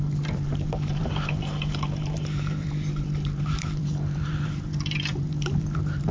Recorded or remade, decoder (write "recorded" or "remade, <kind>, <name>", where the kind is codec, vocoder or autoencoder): remade, vocoder, BigVGAN v2